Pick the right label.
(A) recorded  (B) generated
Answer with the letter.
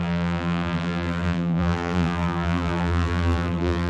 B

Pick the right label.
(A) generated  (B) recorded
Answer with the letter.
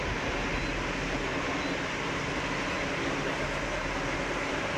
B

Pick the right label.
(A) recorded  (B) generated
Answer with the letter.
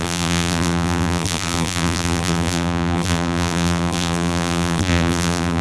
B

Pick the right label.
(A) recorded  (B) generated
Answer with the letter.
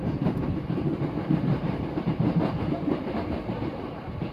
B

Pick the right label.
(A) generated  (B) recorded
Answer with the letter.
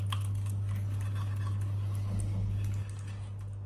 B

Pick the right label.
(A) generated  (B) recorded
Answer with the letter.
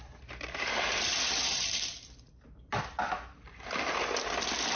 A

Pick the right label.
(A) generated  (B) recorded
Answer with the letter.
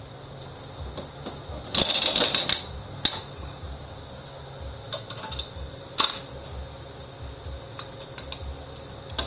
B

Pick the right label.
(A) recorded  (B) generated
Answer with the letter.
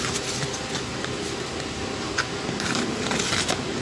A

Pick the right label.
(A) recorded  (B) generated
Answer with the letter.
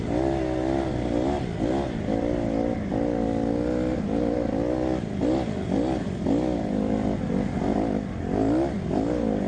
A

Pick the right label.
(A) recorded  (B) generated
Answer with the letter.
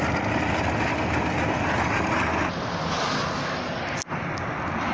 A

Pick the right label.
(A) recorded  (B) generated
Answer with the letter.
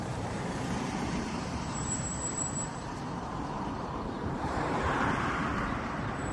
B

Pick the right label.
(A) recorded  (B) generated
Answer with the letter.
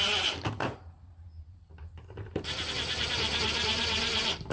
B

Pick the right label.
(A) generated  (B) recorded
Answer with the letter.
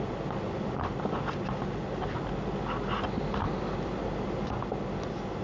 B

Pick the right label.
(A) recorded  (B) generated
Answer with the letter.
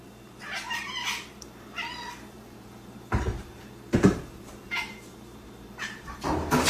B